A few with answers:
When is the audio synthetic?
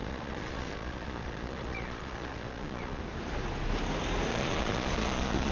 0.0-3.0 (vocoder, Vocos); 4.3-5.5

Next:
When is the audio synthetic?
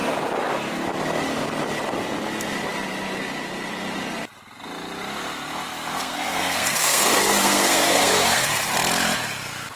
6.0-8.5 (codec, SNAC)